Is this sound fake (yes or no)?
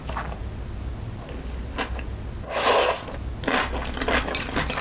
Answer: no